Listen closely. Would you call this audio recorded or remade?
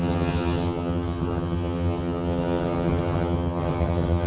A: remade